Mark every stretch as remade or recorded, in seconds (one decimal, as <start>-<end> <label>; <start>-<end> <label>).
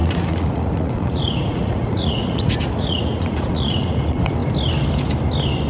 0.0-4.4 remade; 4.4-5.7 recorded